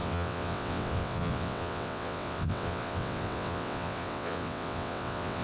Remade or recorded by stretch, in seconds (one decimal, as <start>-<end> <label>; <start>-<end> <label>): 0.0-5.4 remade

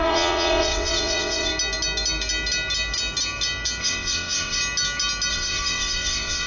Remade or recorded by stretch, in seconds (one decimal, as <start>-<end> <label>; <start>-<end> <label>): 0.0-1.5 remade; 1.5-3.8 recorded; 3.8-4.6 remade; 4.6-5.3 recorded; 5.3-6.5 remade

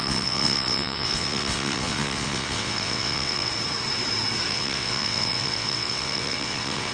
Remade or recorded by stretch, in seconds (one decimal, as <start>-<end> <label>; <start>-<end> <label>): 0.0-3.5 remade; 3.5-4.5 recorded; 4.5-6.9 remade

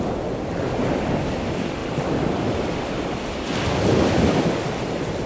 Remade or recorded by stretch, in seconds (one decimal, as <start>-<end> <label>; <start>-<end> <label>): 0.0-5.3 recorded

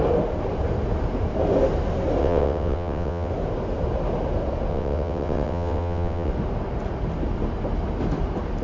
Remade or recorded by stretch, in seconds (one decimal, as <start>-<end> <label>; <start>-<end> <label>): 0.0-2.2 recorded; 2.2-3.3 remade; 3.3-4.7 recorded; 4.7-6.3 remade; 6.3-8.6 recorded

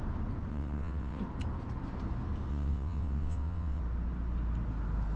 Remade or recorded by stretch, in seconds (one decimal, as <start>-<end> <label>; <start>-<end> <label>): 0.0-0.5 recorded; 0.5-1.2 remade; 1.2-2.5 recorded; 2.5-3.8 remade; 3.8-5.2 recorded